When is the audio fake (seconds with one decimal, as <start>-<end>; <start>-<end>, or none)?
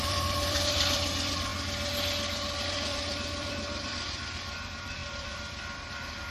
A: 0.0-1.5; 2.6-6.3